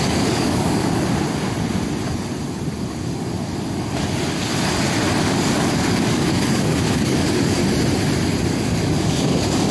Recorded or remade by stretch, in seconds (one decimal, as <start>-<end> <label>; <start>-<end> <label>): 0.0-0.8 remade; 0.8-2.8 recorded; 2.8-3.5 remade; 3.5-5.2 recorded; 5.2-7.6 remade; 7.6-8.5 recorded; 8.5-9.7 remade